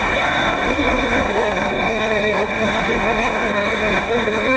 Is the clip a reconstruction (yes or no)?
yes